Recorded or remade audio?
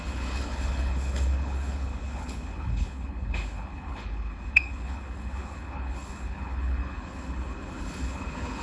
remade